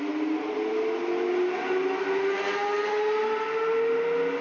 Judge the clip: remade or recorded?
recorded